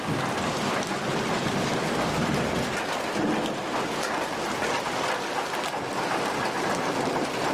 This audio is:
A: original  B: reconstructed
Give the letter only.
A